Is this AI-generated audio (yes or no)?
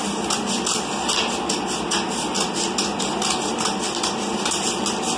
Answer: no